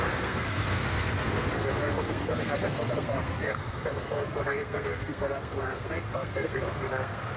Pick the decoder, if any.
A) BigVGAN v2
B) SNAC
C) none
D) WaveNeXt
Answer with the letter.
B